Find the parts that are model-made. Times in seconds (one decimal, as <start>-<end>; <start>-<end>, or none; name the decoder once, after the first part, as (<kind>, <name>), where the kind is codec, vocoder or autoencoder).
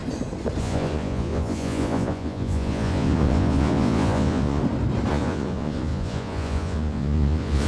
0.6-4.6 (vocoder, Vocos); 5.1-7.7